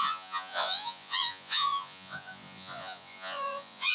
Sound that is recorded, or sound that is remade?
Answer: remade